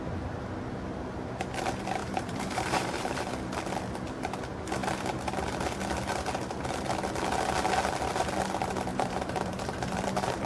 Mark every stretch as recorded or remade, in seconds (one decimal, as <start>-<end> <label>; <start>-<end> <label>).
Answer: 0.0-2.0 recorded; 2.0-3.3 remade; 3.3-8.9 recorded; 8.9-10.5 remade